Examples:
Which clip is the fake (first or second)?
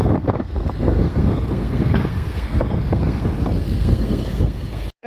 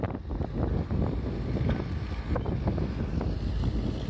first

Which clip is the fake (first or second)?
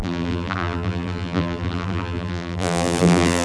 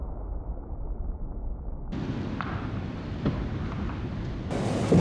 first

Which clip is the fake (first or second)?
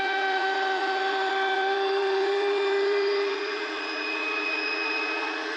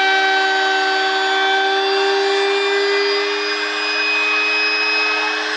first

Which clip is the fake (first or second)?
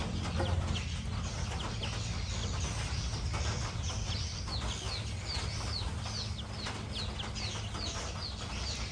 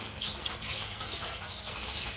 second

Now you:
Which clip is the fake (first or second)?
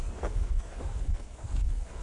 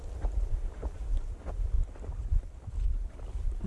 first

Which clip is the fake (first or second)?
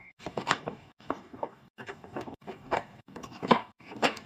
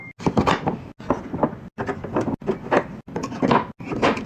first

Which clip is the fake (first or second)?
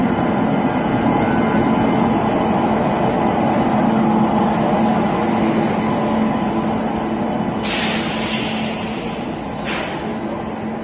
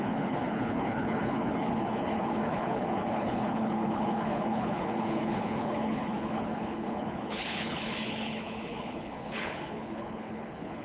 second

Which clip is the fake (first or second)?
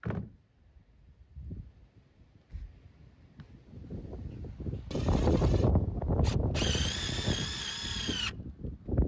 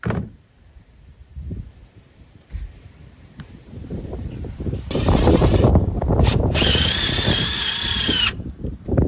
second